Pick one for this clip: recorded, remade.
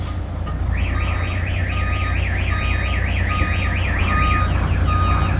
recorded